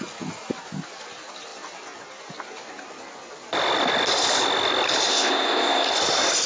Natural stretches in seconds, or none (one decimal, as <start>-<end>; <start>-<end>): 0.0-5.1; 5.9-6.5